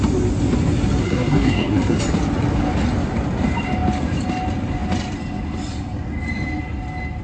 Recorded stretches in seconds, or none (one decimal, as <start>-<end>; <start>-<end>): 0.0-1.0; 2.0-7.2